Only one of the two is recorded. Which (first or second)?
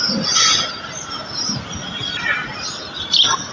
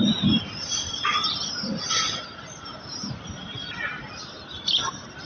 first